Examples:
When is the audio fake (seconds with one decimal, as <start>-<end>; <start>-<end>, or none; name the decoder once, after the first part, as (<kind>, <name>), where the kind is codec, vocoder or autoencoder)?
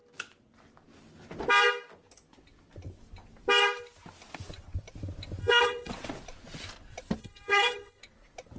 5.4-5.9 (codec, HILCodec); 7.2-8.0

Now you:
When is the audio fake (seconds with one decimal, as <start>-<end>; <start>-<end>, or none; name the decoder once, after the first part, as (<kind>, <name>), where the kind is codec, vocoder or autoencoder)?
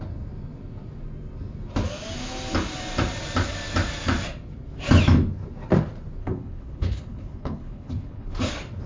6.2-8.5 (codec, HILCodec)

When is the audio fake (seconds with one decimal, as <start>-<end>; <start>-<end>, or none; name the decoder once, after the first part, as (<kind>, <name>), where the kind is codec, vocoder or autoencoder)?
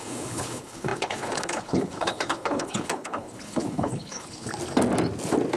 0.0-4.5 (codec, HILCodec)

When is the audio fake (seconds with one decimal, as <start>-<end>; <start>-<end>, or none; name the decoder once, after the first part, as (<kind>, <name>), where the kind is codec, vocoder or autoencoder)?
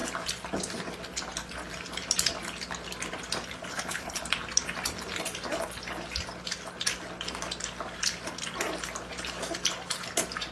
3.7-4.2 (codec, HILCodec)